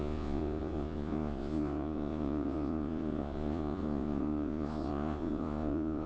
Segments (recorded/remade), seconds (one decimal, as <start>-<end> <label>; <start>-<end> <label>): 0.0-6.1 remade